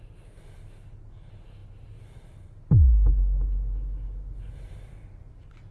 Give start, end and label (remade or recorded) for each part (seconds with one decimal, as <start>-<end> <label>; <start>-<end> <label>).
0.0-5.7 recorded